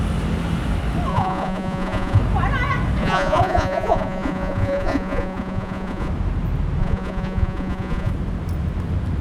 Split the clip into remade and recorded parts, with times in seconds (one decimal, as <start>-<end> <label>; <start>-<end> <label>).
0.0-1.1 recorded; 1.1-2.2 remade; 2.2-3.0 recorded; 3.0-6.1 remade; 6.1-6.8 recorded; 6.8-8.1 remade; 8.1-9.2 recorded